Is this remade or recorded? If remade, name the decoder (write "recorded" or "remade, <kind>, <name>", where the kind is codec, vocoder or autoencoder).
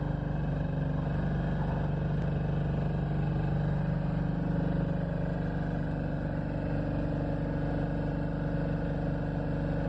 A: recorded